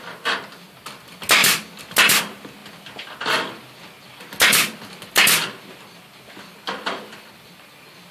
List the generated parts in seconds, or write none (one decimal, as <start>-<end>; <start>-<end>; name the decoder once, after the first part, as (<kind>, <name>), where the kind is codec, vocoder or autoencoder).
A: none